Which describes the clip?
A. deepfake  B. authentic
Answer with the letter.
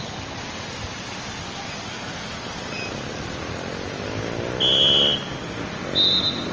B